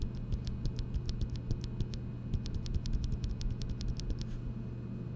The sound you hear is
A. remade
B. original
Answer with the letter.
B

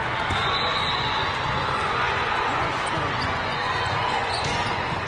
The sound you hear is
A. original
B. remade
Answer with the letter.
B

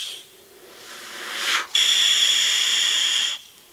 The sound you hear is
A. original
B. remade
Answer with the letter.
B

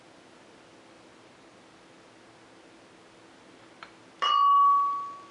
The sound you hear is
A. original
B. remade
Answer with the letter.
A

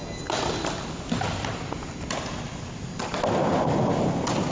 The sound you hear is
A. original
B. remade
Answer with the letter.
A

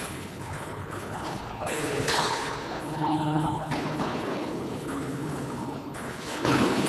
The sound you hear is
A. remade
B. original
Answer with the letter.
A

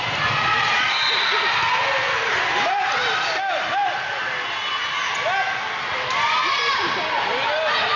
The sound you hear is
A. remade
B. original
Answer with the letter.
B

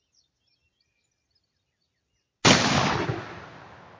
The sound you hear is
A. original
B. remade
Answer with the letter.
A